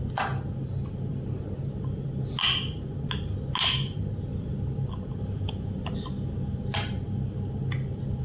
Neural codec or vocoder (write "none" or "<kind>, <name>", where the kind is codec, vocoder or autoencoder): none